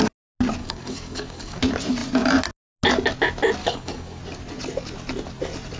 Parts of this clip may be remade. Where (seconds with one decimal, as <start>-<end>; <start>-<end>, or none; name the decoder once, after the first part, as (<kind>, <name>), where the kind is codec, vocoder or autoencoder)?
0.6-1.6 (codec, DAC); 3.6-4.2